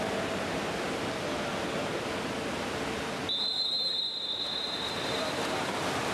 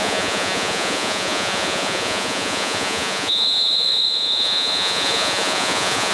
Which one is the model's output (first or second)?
second